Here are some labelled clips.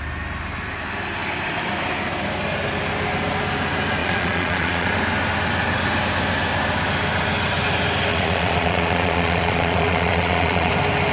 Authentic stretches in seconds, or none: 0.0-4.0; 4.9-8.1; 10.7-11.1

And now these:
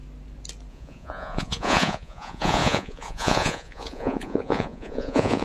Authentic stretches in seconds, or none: 0.0-0.7